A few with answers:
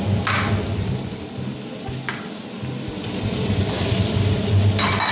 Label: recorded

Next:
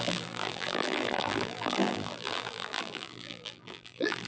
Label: remade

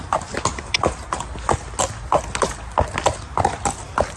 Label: recorded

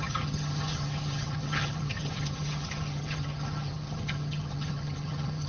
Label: remade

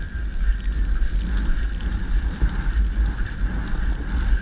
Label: recorded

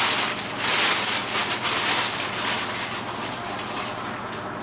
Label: recorded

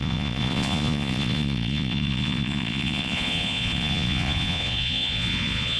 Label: remade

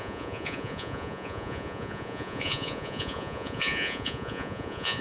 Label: remade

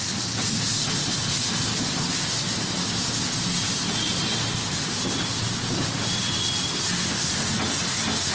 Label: recorded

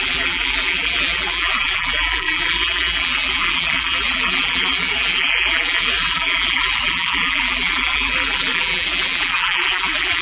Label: remade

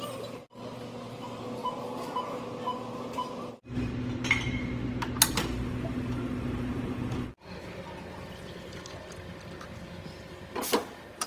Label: recorded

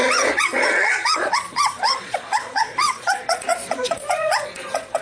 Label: remade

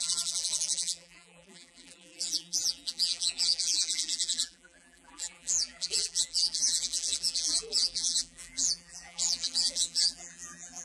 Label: remade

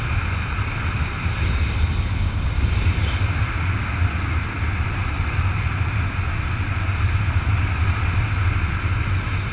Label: recorded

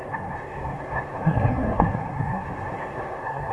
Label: remade